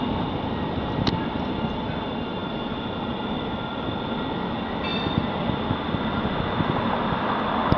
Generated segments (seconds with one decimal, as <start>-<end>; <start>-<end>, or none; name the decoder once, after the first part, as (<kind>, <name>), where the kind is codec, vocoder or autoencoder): none